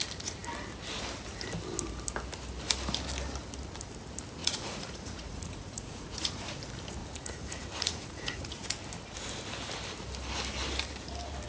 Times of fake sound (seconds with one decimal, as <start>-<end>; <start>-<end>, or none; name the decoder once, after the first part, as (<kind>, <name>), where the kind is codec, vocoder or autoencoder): 4.4-6.6 (vocoder, Vocos); 7.0-8.5